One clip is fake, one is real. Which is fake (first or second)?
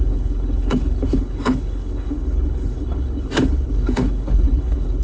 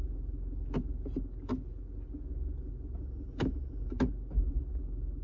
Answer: first